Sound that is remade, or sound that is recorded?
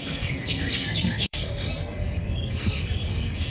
remade